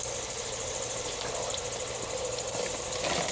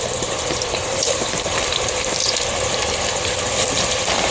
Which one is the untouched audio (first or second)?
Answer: first